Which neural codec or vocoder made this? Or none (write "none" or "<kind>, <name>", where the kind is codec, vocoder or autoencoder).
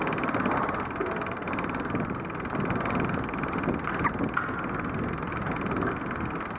none